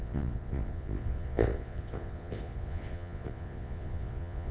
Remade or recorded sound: remade